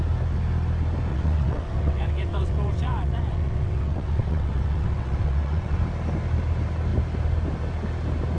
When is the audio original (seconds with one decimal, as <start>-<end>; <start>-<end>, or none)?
0.0-1.1; 5.8-8.4